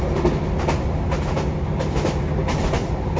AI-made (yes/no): no